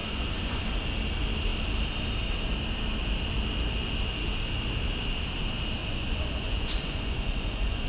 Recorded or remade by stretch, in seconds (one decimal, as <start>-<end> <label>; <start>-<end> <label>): 0.0-0.6 remade; 0.6-5.8 recorded; 5.8-7.9 remade